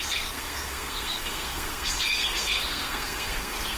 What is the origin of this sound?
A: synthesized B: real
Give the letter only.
A